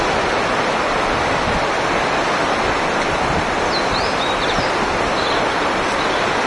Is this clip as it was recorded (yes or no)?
yes